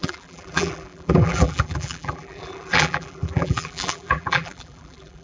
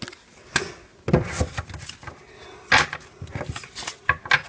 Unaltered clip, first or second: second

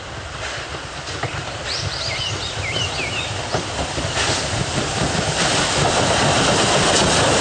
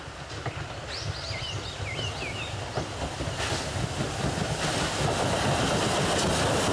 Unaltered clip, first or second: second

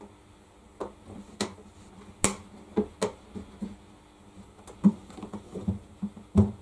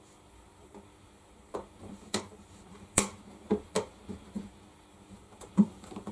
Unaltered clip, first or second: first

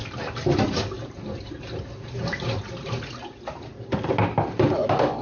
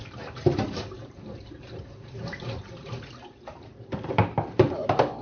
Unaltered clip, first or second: first